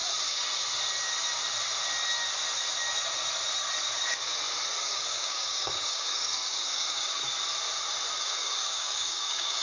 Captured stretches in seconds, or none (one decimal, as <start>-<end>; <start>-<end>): 0.0-4.8; 7.3-8.2

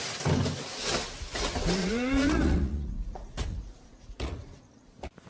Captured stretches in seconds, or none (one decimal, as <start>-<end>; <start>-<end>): 0.0-1.8; 4.6-5.3